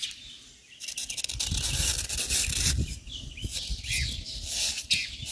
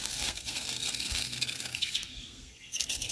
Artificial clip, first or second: second